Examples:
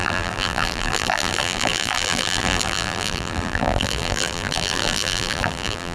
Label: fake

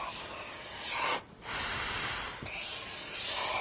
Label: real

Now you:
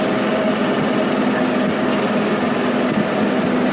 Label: real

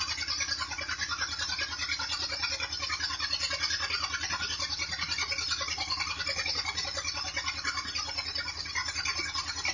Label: real